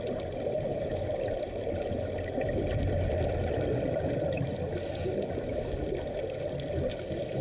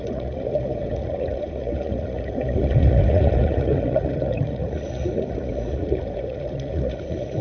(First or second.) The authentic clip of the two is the first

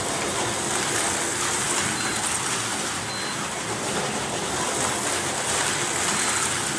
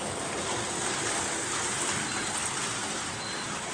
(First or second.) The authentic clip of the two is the first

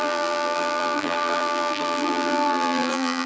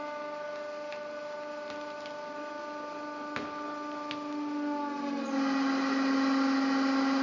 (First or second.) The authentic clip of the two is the second